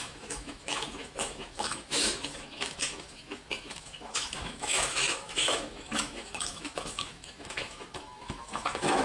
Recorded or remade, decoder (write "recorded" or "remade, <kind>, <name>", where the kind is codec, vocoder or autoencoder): remade, autoencoder, DAC-VAE